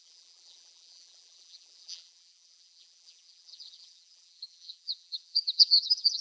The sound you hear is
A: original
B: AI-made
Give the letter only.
B